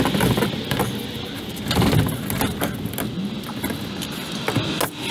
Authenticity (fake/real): real